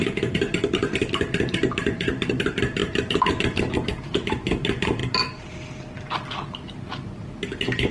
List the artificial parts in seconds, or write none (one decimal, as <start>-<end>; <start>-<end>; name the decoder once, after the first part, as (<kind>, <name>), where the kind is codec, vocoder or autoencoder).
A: 0.0-5.0 (vocoder, BigVGAN v2); 6.5-7.9